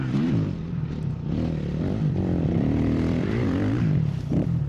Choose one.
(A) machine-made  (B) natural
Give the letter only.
A